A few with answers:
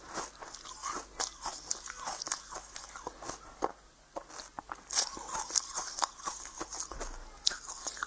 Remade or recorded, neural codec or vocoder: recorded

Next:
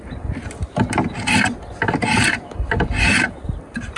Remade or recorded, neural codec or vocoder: recorded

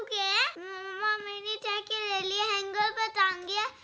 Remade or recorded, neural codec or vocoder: recorded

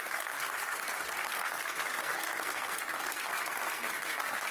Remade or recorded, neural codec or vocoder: remade, codec, SNAC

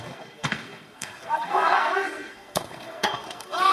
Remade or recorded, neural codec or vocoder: remade, codec, SNAC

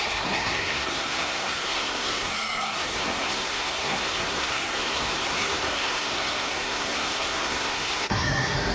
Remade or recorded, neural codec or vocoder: remade, codec, SNAC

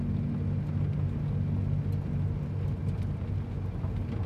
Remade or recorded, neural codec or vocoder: recorded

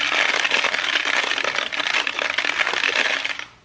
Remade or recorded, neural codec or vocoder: recorded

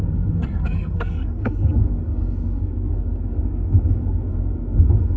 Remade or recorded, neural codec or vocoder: remade, codec, SNAC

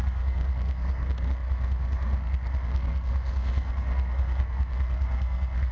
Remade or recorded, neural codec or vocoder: remade, codec, SNAC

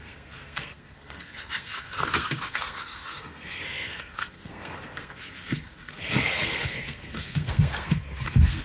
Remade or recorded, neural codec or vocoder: remade, codec, SNAC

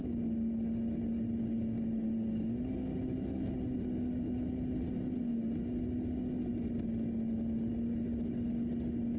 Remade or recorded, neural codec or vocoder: recorded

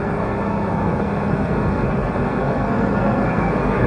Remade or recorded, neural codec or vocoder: remade, codec, SNAC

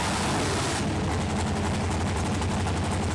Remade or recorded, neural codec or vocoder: recorded